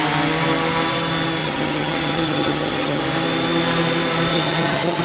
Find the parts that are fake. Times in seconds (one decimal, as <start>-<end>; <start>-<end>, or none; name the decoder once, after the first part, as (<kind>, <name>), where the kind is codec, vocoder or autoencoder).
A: 1.4-3.0 (vocoder, HiFi-GAN); 4.3-5.0